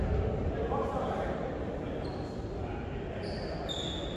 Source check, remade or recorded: recorded